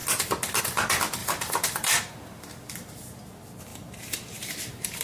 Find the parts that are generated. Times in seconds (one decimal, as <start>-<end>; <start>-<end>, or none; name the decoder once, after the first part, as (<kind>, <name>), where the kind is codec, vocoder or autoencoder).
1.2-3.3 (vocoder, BigVGAN v2); 3.7-5.0